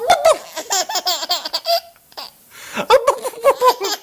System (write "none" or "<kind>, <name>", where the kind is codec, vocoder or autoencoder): none